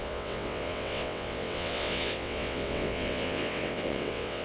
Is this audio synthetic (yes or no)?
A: yes